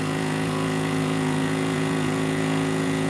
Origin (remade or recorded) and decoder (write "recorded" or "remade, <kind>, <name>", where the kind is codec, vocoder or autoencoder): remade, vocoder, Vocos